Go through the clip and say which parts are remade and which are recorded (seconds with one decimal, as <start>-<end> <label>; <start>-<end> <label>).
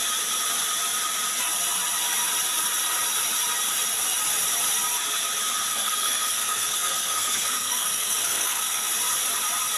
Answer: 0.0-5.7 recorded; 5.7-8.9 remade; 8.9-9.8 recorded